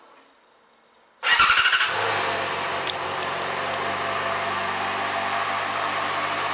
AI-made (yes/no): no